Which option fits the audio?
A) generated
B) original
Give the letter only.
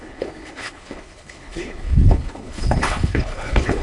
A